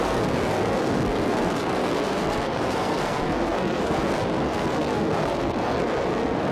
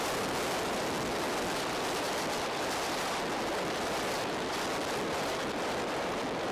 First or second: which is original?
second